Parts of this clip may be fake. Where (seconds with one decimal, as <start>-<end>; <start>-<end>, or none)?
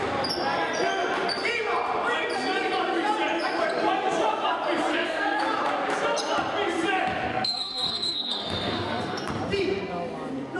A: 4.9-5.4; 7.3-9.3